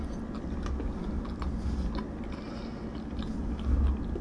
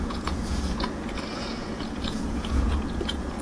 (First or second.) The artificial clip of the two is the second